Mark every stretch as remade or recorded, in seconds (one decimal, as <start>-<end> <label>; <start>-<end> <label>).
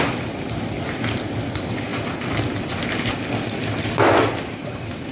0.0-5.1 recorded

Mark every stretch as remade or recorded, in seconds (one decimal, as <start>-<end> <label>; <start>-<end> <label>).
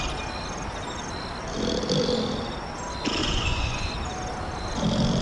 0.0-3.2 recorded; 3.2-3.9 remade; 3.9-5.2 recorded